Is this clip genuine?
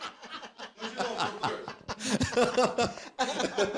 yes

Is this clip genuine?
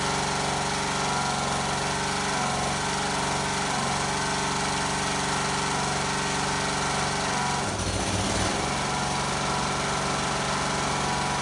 yes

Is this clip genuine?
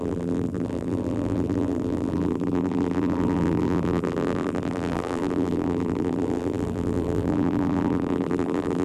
no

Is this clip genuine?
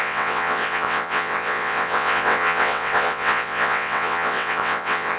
no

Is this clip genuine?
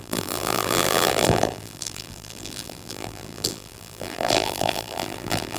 no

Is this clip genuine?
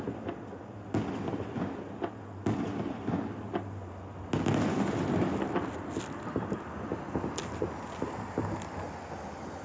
yes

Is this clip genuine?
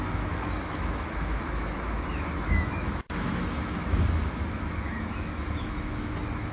no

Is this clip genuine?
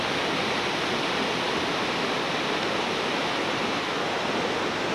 yes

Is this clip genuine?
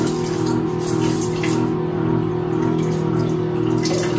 yes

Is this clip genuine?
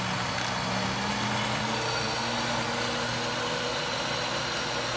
yes